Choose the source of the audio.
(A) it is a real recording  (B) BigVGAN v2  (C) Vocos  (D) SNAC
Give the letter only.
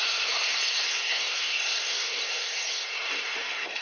D